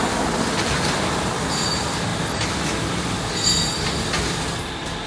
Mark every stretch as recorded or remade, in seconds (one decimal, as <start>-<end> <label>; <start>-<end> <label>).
0.0-5.1 recorded